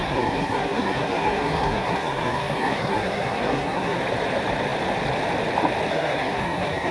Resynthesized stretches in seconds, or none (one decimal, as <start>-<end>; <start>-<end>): 0.0-4.0; 5.9-6.9